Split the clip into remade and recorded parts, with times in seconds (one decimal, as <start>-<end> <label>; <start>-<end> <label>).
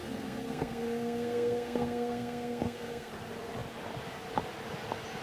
0.0-3.1 remade; 3.1-5.2 recorded